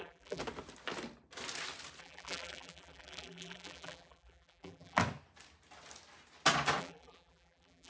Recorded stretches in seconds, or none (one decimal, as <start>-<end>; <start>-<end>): 0.4-2.0; 5.0-6.8

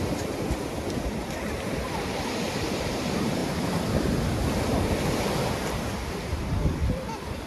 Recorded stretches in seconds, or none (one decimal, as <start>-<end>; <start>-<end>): none